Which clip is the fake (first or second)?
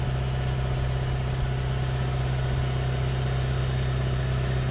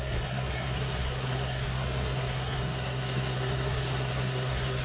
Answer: second